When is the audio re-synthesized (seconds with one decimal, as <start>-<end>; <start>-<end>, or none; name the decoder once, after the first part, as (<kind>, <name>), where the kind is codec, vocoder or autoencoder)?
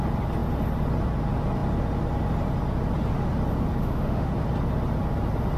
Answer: 3.8-4.3 (autoencoder, DAC-VAE)